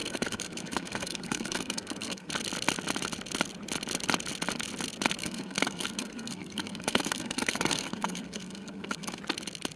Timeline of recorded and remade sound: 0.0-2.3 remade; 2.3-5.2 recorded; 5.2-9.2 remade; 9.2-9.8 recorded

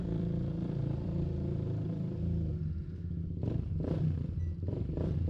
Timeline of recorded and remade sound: 0.0-2.5 remade; 2.5-4.2 recorded; 4.2-5.3 remade

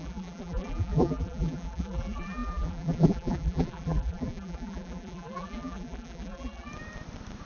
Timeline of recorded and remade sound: 0.0-6.7 remade; 6.7-7.5 recorded

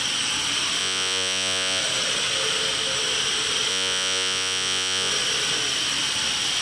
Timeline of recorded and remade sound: 0.0-0.8 recorded; 0.8-1.8 remade; 1.8-3.7 recorded; 3.7-5.1 remade; 5.1-6.6 recorded